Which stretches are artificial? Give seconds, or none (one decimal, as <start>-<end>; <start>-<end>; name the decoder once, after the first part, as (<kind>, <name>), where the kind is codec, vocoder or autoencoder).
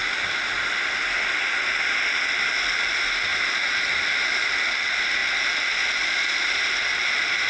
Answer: none